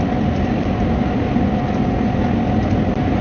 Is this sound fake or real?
real